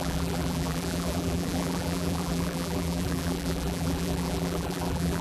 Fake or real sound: fake